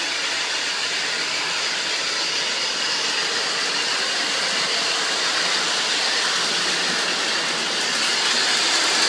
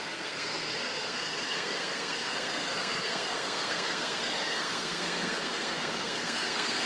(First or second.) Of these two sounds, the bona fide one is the first